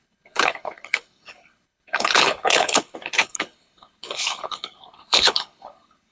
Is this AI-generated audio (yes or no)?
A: yes